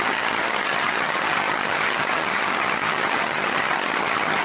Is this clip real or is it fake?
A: fake